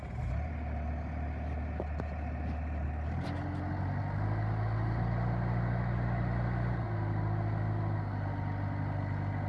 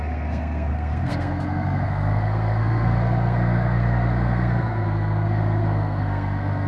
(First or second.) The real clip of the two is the first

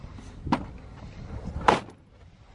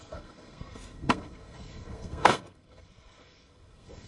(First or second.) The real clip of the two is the first